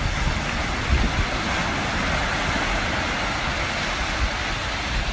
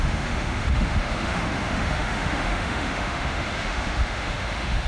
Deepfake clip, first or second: second